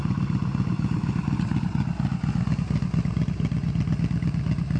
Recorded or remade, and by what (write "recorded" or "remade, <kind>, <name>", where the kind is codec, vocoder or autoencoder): recorded